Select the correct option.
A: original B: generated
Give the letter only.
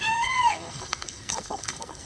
B